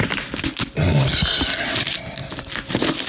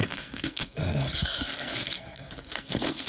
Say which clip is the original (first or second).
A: first